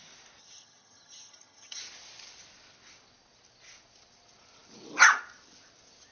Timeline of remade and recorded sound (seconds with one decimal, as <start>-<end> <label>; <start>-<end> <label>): 0.0-0.4 recorded; 0.4-1.8 remade; 1.8-6.1 recorded